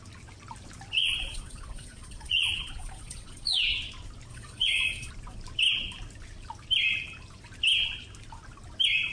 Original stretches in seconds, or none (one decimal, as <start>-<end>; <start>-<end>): 0.0-1.0; 3.6-4.3; 5.1-9.1